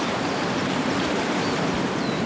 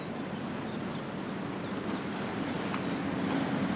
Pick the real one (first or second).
second